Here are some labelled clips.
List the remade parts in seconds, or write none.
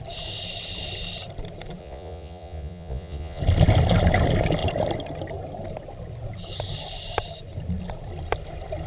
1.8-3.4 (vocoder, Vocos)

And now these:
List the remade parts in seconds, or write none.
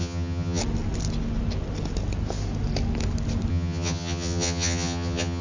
0.0-0.6 (vocoder, HiFi-GAN); 3.5-5.4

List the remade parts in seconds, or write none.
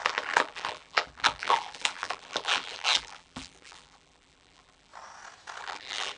0.0-4.9 (vocoder, BigVGAN v2); 5.6-6.2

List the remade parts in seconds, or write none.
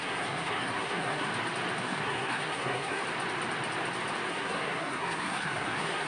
0.0-1.3 (codec, SNAC); 1.8-3.0; 4.3-6.1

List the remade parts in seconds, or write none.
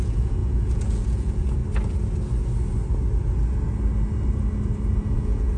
0.0-1.6 (vocoder, Vocos); 5.0-5.6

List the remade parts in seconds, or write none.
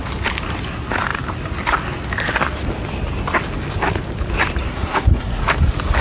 4.7-5.4 (codec, SNAC)